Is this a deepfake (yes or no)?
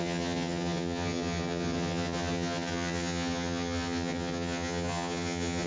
yes